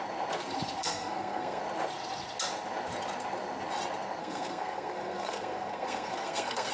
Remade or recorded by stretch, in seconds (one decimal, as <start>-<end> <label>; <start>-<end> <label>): 0.0-0.8 recorded; 0.8-1.6 remade; 1.6-4.2 recorded; 4.2-6.7 remade